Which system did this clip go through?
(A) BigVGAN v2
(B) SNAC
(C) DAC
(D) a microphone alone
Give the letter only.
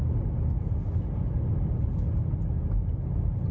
D